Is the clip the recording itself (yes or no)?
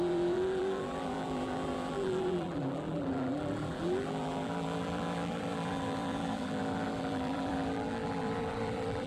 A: no